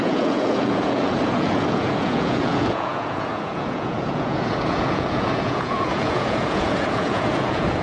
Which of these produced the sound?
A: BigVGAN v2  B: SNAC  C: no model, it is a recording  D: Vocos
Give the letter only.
D